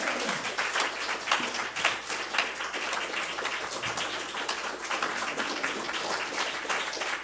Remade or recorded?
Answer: recorded